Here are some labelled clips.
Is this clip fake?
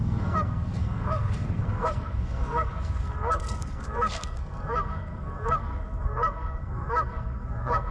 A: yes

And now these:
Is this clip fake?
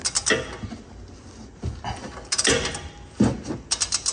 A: no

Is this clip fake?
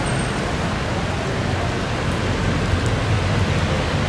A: no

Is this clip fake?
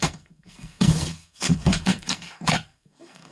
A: yes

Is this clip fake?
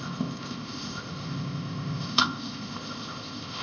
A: yes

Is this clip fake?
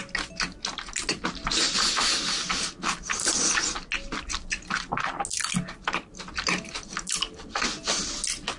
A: no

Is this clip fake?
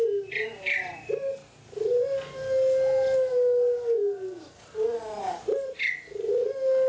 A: no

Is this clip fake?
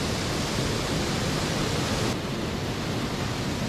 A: no